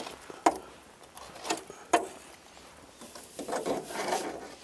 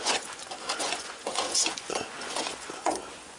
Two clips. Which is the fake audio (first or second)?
second